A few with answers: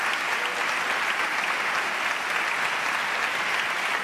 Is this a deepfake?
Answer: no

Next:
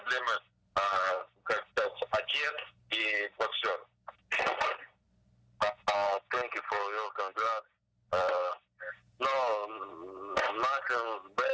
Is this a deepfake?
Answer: no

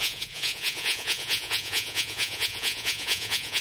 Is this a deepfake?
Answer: yes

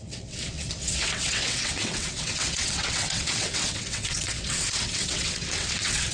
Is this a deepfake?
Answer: yes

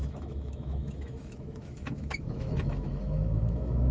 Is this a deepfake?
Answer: yes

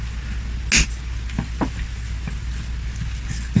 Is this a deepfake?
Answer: no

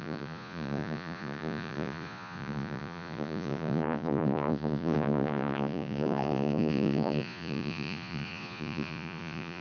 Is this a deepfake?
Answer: yes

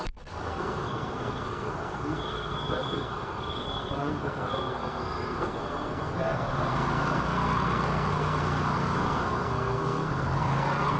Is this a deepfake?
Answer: yes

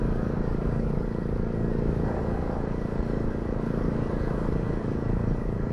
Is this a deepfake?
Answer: yes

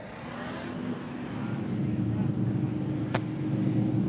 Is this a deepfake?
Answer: no